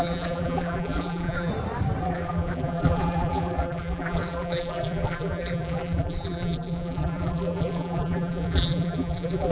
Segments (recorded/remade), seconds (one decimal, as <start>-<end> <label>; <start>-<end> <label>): 0.0-1.5 remade; 1.5-2.0 recorded; 2.0-9.5 remade